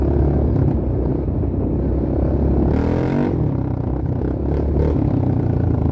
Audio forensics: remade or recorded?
recorded